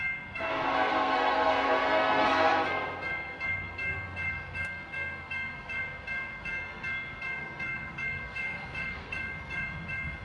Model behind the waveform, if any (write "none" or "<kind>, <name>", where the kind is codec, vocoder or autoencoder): codec, SNAC